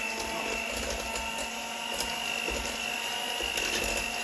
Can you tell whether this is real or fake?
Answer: real